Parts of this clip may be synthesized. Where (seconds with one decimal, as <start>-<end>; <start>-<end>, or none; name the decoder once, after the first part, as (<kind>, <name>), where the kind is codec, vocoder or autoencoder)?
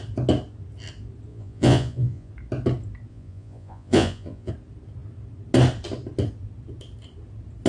1.3-2.3 (vocoder, Vocos); 3.1-4.5